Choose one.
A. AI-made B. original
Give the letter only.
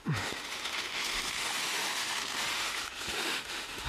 A